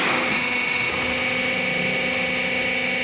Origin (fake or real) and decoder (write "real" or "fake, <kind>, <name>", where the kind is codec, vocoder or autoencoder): real